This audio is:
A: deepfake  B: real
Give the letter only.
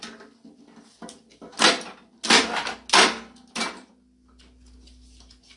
B